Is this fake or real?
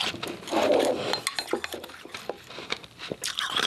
real